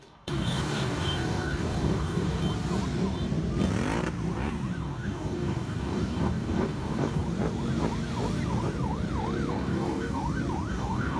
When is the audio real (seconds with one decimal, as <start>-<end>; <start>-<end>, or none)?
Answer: 2.4-4.8; 7.2-9.5; 10.2-10.7